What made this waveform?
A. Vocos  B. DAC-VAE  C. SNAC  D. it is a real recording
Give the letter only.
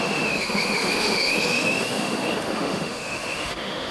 B